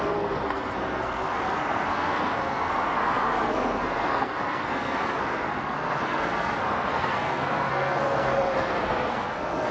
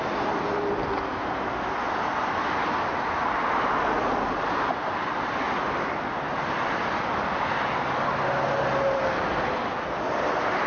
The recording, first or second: second